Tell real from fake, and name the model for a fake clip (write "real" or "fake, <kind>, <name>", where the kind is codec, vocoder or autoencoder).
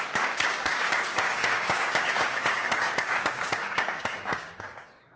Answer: fake, codec, DAC